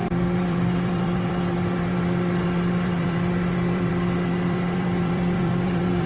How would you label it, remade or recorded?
remade